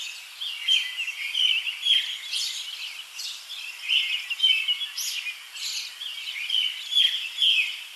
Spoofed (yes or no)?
no